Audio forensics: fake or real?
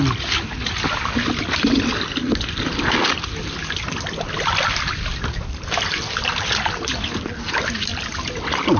real